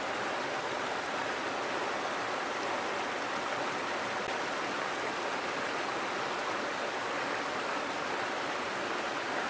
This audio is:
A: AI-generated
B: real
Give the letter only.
B